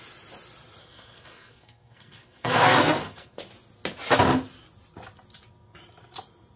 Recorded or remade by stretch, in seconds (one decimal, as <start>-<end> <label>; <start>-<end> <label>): 0.0-0.8 recorded; 0.8-3.4 remade; 3.4-6.6 recorded